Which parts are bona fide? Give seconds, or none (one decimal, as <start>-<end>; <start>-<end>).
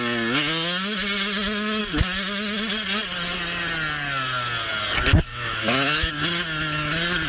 0.0-5.3; 6.1-7.3